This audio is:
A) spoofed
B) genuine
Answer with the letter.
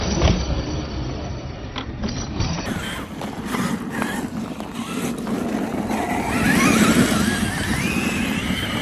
B